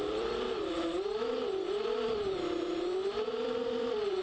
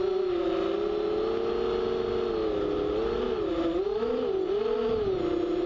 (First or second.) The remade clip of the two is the first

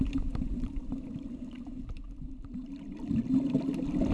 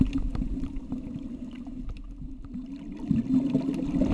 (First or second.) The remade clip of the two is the first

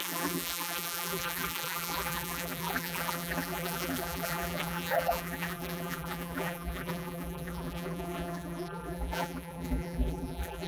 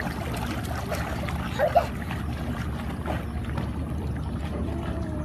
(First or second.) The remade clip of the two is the first